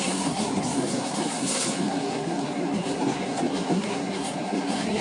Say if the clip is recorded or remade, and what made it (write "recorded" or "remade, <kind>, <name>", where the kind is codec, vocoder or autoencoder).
remade, codec, SNAC